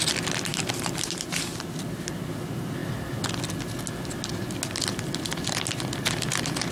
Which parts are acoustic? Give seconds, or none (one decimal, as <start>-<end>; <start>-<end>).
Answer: 0.0-0.5; 1.7-6.7